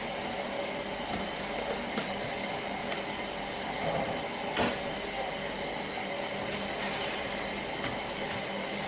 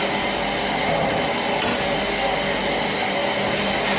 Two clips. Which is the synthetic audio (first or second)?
first